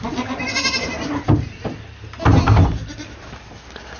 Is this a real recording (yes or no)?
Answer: yes